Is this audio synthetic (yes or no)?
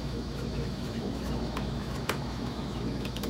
yes